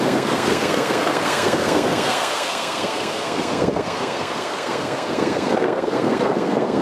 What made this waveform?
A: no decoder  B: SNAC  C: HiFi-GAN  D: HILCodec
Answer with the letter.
B